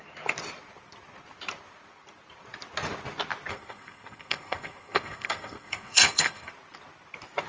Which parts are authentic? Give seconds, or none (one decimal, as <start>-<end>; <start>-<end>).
0.0-3.5; 6.5-7.5